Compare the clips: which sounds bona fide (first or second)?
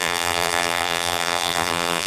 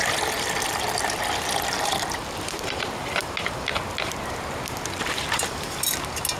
second